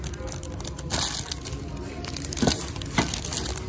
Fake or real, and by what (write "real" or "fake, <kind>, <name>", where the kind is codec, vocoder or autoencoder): real